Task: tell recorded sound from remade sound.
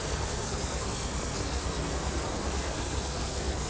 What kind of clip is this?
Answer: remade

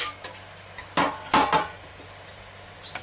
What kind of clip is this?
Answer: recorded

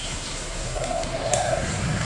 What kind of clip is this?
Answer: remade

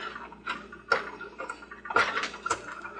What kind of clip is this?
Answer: recorded